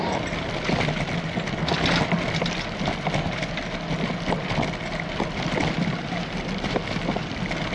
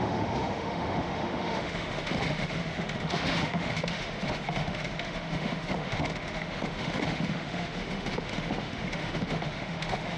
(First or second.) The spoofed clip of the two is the second